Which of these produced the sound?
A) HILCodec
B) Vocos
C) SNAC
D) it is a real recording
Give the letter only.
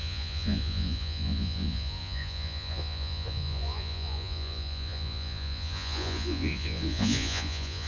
B